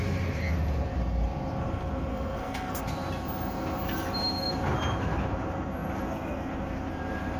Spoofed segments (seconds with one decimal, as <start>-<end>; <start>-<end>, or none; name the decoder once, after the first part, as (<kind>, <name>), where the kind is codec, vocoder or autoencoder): 2.1-2.8 (codec, SNAC)